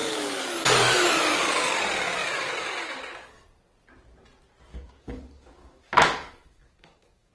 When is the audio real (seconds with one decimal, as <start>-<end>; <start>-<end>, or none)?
1.8-2.2; 3.0-4.7